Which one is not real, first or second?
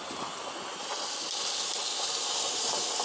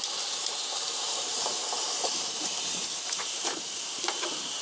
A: second